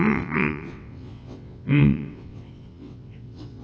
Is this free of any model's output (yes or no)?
no